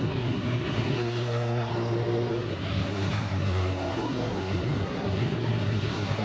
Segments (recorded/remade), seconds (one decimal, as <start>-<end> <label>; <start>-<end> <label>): 0.0-1.7 remade; 1.7-2.3 recorded; 2.3-6.2 remade